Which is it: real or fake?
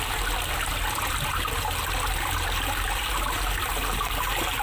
real